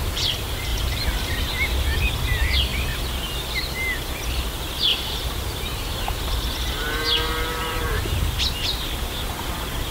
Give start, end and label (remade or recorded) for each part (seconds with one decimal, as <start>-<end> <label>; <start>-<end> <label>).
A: 0.0-0.7 recorded; 0.7-1.3 remade; 1.3-4.9 recorded; 4.9-8.0 remade; 8.0-9.9 recorded